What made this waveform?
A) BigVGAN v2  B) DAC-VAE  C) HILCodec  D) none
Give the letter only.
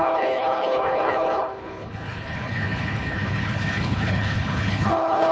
C